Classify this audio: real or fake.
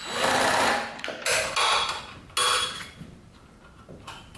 real